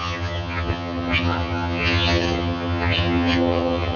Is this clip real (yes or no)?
no